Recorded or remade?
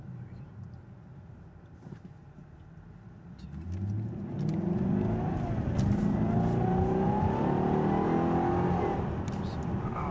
recorded